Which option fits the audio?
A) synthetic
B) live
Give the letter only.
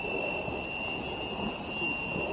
B